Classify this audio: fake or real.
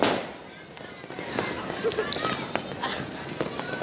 real